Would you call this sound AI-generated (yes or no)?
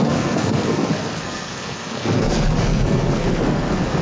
yes